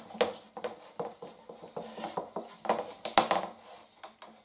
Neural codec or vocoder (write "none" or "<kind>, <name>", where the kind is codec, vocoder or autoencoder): none